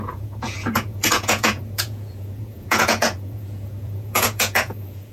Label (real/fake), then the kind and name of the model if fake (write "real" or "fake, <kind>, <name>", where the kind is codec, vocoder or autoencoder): fake, vocoder, Vocos